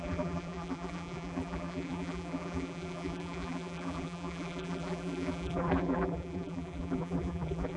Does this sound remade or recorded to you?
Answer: remade